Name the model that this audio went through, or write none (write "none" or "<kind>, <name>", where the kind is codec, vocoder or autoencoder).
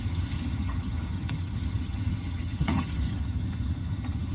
vocoder, HiFi-GAN